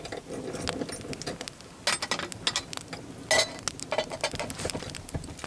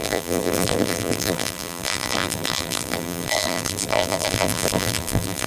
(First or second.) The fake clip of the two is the second